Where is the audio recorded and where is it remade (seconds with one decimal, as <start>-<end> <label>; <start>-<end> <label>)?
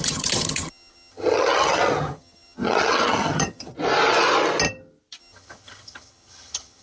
0.0-3.7 remade; 3.7-5.2 recorded; 5.2-6.8 remade